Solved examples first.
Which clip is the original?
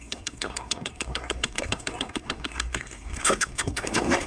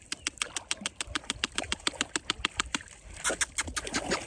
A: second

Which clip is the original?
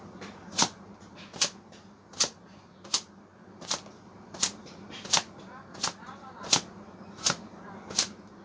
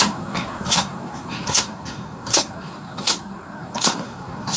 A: first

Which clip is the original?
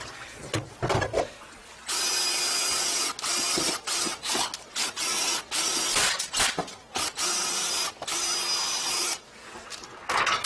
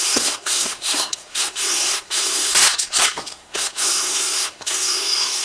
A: first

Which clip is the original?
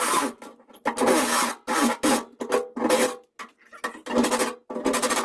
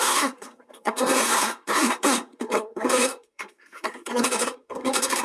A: first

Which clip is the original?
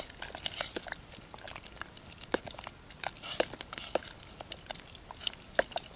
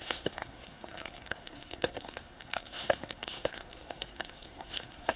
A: first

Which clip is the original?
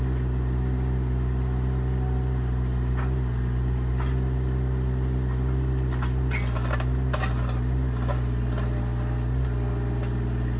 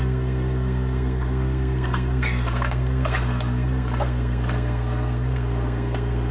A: first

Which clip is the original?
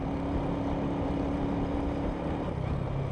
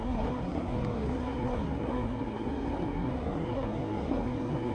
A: first